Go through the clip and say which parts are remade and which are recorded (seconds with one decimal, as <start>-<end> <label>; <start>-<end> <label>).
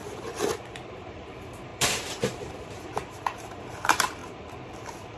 0.0-0.9 recorded; 0.9-4.2 remade; 4.2-5.2 recorded